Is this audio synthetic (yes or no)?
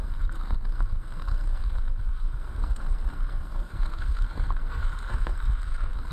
yes